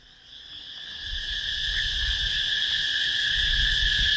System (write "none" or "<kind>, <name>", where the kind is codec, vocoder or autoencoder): none